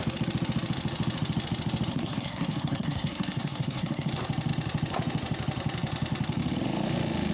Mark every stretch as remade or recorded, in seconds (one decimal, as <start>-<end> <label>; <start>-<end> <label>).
0.0-1.9 recorded; 1.9-4.1 remade; 4.1-7.3 recorded